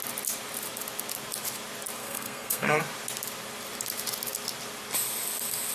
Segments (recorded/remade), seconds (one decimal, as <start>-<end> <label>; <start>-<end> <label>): 0.0-2.0 recorded; 2.0-2.8 remade; 2.8-5.7 recorded